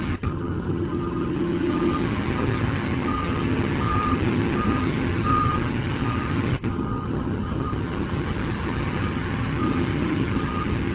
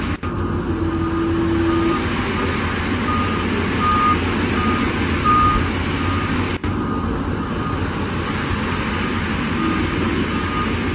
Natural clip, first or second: second